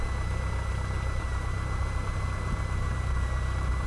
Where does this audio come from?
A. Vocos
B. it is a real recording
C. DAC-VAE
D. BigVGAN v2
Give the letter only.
B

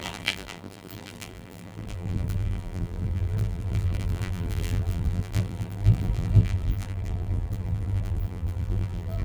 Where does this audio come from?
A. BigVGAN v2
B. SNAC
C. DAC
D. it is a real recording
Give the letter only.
A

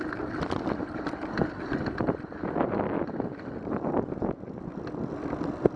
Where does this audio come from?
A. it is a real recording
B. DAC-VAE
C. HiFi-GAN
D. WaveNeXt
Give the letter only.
A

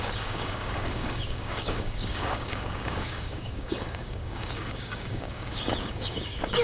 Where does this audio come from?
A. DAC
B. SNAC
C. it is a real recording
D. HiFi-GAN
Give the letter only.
A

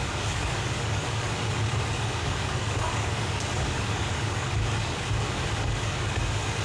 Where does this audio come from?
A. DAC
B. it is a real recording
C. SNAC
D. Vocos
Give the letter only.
A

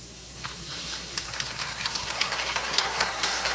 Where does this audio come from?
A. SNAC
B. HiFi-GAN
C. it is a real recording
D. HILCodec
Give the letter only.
A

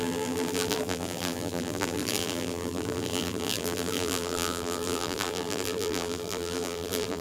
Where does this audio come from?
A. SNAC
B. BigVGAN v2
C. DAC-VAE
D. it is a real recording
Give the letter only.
B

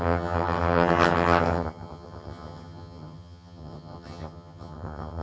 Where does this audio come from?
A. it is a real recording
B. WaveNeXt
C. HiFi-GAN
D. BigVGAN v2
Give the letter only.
C